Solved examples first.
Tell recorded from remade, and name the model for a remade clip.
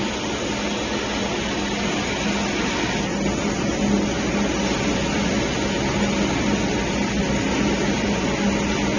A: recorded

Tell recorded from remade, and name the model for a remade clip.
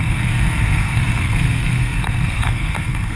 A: remade, codec, SNAC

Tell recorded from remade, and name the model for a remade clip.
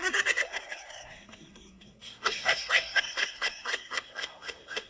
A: remade, codec, SNAC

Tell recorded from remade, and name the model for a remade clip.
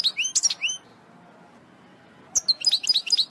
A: recorded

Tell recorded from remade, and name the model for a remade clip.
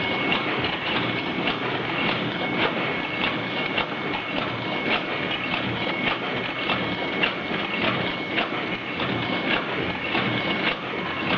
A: recorded